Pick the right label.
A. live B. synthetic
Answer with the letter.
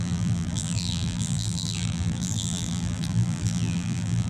B